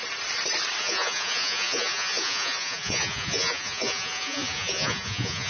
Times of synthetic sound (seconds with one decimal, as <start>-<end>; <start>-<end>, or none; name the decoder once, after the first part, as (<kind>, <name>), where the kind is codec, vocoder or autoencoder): 0.8-5.5 (vocoder, Vocos)